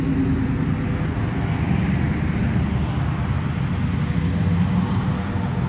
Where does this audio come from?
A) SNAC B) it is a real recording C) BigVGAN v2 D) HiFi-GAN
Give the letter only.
B